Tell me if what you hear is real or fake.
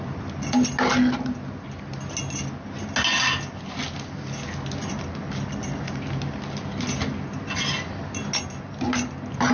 real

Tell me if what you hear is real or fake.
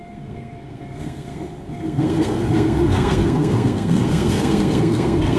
fake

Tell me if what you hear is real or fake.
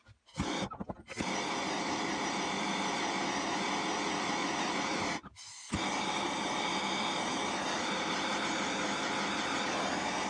real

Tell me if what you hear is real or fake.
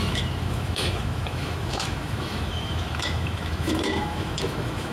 fake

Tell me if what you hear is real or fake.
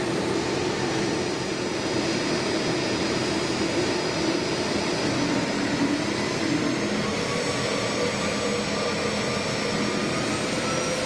real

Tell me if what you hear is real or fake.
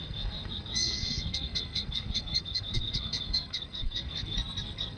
fake